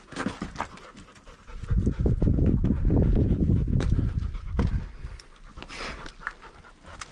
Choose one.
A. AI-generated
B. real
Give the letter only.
B